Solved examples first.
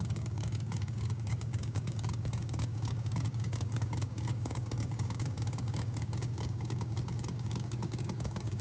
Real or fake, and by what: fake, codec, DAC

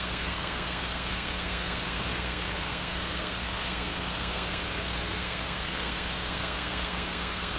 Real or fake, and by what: fake, codec, SNAC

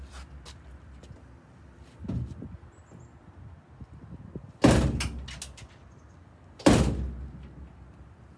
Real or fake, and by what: real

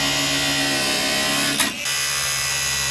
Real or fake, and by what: real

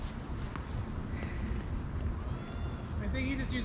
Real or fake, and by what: real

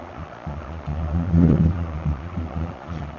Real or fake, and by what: fake, vocoder, Vocos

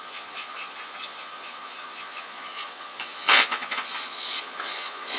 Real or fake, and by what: fake, vocoder, Vocos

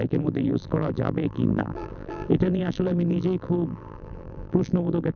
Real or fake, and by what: fake, vocoder, BigVGAN v2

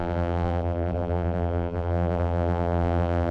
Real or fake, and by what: fake, vocoder, BigVGAN v2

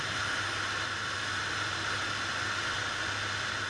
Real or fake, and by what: real